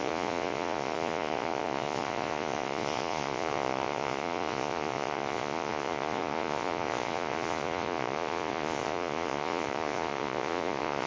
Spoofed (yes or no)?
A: yes